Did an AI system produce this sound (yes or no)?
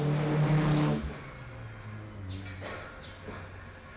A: no